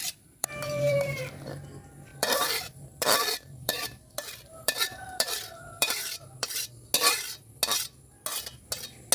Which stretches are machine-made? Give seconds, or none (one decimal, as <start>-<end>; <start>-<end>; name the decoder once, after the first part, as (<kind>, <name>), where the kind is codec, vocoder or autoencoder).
0.0-1.3 (vocoder, BigVGAN v2); 2.1-6.7